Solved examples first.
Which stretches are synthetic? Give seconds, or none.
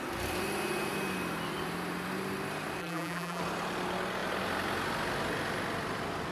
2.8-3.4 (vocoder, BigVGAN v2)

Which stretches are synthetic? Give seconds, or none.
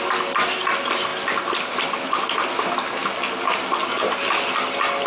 1.1-2.4 (vocoder, BigVGAN v2)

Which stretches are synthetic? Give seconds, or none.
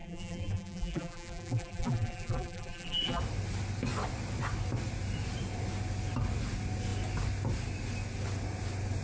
0.0-3.2 (vocoder, BigVGAN v2)